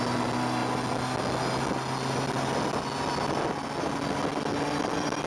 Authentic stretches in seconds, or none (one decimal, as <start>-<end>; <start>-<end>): 0.0-5.3